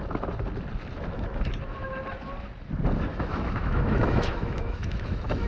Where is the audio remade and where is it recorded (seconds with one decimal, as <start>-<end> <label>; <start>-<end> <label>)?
0.0-3.1 recorded; 3.1-5.5 remade